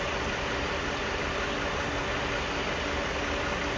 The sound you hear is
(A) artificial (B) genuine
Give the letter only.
B